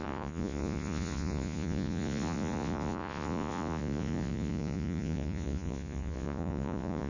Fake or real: fake